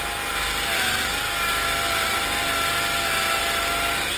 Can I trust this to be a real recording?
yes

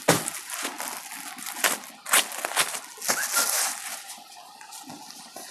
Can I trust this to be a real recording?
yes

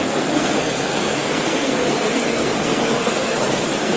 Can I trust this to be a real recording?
no